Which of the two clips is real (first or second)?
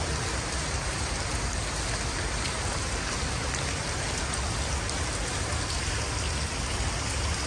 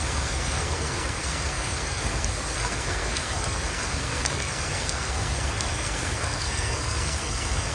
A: first